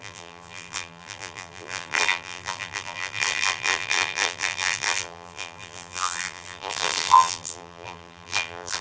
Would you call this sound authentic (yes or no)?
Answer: no